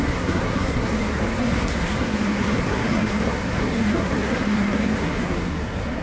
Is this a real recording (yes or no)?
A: no